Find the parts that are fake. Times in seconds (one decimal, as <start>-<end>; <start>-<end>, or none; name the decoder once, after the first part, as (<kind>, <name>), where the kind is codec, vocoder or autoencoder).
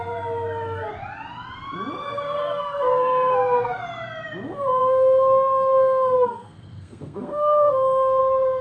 2.1-3.8 (codec, SNAC); 4.8-8.2